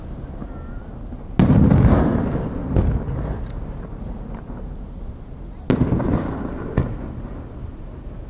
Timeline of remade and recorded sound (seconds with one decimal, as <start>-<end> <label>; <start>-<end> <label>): 0.0-8.3 recorded